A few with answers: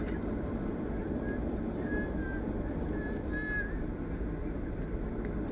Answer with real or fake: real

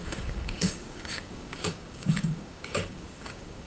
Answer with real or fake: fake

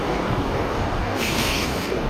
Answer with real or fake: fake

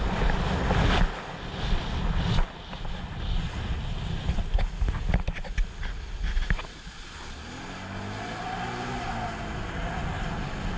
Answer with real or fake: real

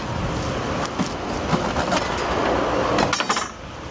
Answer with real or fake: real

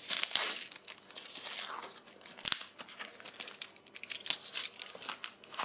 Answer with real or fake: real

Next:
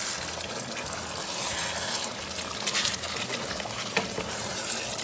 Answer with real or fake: real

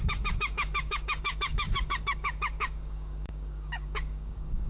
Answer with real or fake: fake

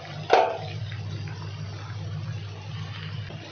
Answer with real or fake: real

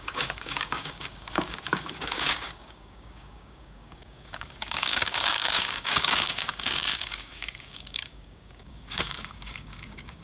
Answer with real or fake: fake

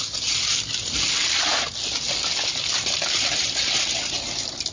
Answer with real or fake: real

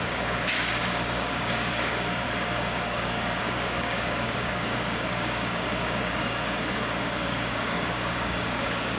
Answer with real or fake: fake